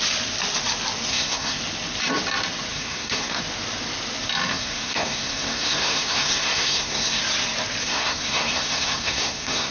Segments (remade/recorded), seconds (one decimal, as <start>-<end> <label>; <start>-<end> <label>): 0.0-1.1 recorded; 1.1-1.6 remade; 1.6-2.7 recorded; 2.7-3.4 remade; 3.4-4.5 recorded; 4.5-7.2 remade; 7.2-7.8 recorded; 7.8-9.7 remade